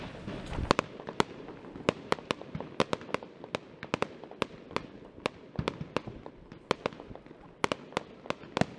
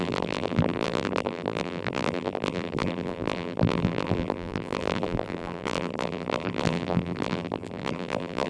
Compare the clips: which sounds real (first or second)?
first